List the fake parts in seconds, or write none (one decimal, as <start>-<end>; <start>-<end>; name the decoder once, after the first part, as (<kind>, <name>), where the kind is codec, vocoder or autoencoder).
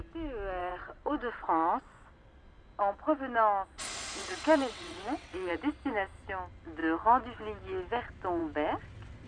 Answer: 0.6-2.4 (vocoder, WaveNeXt); 4.2-5.5